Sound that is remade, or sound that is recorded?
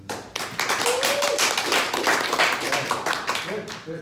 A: recorded